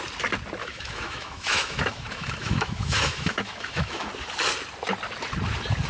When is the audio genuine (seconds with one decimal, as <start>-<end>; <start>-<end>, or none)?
0.0-0.6; 4.1-5.9